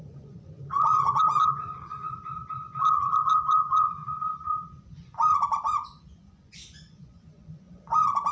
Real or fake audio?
fake